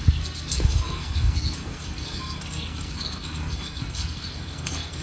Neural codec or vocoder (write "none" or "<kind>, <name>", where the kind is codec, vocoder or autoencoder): codec, SNAC